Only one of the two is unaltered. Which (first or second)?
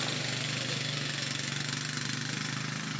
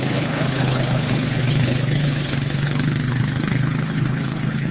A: first